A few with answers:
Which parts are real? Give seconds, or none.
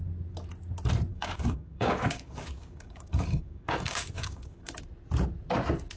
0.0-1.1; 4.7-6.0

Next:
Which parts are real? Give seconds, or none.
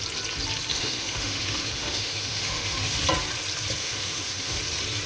0.0-0.7; 3.0-3.8; 4.6-5.1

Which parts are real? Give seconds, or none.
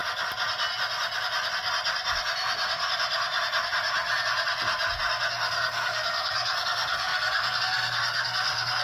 0.0-5.3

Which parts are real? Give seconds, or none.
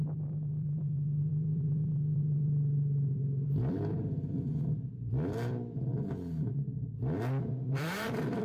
5.9-7.5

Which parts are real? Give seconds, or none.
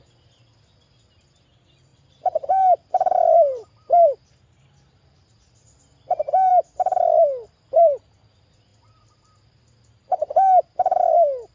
0.0-1.9; 5.8-6.5; 7.0-11.5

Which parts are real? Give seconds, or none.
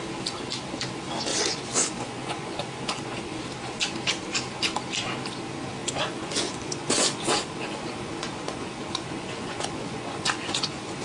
0.0-1.3; 3.4-5.8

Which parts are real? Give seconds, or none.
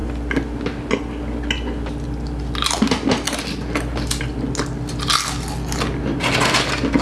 0.0-7.0